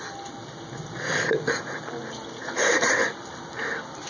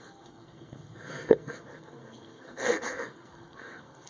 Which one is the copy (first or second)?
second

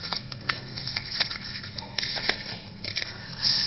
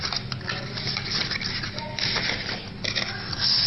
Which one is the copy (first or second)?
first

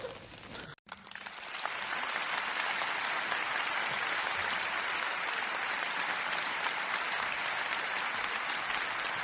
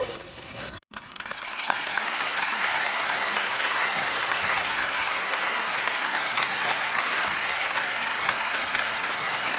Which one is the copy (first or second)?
second